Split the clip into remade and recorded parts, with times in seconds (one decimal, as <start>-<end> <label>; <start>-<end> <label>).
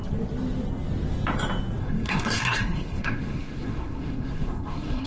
0.0-1.8 recorded; 1.8-5.1 remade